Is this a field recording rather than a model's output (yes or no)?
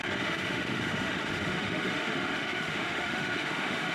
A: no